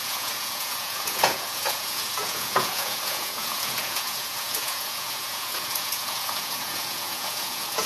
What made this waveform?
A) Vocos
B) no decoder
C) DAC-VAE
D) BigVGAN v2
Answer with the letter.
A